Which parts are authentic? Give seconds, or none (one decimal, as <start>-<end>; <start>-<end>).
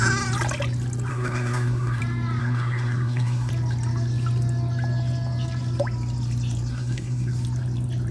0.0-1.1; 2.0-2.4; 3.5-6.7; 7.3-8.1